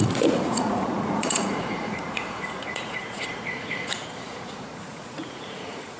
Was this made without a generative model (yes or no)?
no